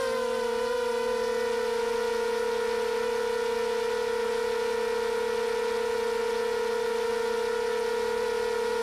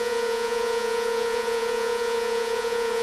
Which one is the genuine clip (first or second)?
first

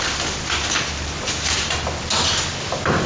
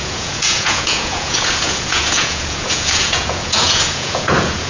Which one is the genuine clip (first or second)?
first